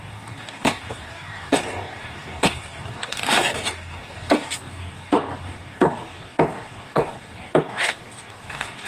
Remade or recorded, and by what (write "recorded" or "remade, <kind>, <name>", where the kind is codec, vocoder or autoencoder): remade, codec, DAC